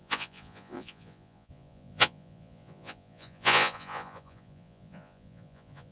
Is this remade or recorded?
remade